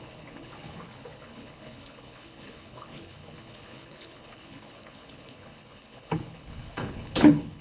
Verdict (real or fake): fake